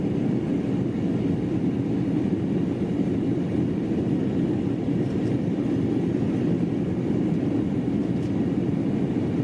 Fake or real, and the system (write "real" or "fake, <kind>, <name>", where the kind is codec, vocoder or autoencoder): real